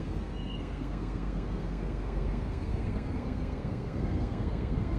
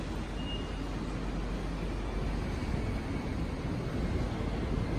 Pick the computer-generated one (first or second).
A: first